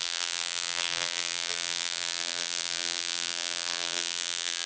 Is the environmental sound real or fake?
fake